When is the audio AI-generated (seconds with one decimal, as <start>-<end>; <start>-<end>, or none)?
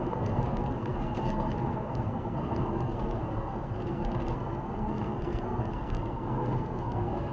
0.0-7.3